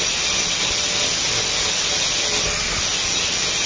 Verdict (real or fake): real